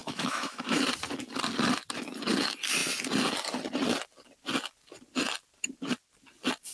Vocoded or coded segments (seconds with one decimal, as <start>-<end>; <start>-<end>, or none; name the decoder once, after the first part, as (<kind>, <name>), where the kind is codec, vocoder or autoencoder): 0.0-0.8 (autoencoder, DAC-VAE)